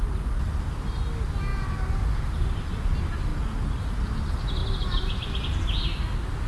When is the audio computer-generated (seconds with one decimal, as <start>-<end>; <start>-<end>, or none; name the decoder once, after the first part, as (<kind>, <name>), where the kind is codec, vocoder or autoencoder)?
none